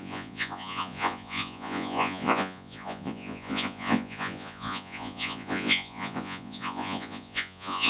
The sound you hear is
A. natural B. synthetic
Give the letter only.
B